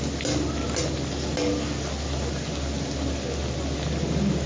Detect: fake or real real